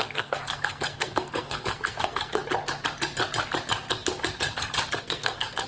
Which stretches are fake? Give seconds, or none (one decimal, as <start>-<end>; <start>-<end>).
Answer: 0.0-2.4; 5.0-5.7